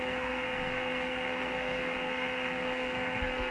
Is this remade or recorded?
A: remade